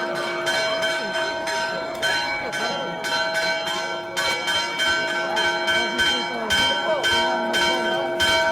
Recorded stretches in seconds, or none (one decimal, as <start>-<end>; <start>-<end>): 0.0-0.7; 2.5-8.5